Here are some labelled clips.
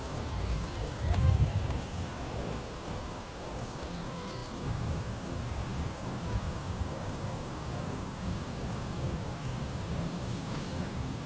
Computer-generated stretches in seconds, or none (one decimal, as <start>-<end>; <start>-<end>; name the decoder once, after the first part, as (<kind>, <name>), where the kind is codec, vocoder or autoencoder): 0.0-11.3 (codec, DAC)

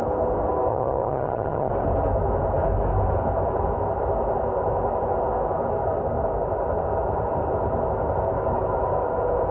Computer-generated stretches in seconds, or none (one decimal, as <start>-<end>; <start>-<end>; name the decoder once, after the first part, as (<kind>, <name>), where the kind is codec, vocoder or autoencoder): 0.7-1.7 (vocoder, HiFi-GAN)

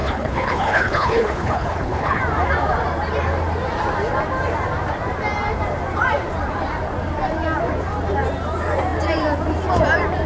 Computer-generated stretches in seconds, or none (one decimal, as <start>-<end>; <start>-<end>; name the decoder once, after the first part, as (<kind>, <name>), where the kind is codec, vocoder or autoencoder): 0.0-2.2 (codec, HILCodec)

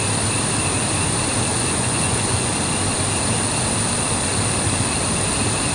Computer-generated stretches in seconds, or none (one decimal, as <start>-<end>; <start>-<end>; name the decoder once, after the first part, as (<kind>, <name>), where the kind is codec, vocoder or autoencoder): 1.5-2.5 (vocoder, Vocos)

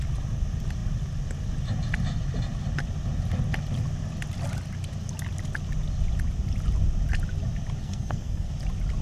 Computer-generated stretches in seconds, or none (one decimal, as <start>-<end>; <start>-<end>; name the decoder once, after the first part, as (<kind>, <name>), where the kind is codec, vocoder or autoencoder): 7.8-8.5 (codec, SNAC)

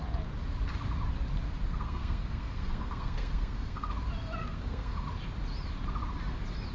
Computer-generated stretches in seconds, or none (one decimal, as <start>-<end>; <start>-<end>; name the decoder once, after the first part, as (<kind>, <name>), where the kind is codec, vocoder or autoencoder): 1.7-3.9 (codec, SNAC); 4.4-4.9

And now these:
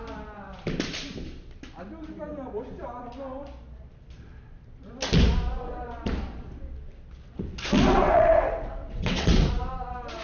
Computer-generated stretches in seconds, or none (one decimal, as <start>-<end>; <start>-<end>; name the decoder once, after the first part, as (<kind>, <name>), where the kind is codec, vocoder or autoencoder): 7.9-9.5 (vocoder, WaveNeXt)

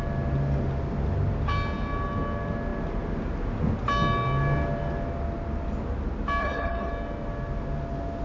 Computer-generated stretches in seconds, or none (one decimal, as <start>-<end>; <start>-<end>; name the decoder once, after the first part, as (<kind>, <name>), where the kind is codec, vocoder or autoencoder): 6.4-6.9 (codec, HILCodec)